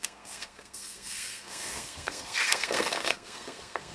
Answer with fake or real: fake